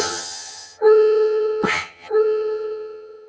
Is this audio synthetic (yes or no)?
yes